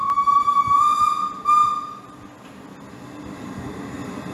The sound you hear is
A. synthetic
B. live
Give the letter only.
B